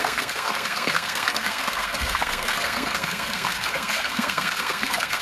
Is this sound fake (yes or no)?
yes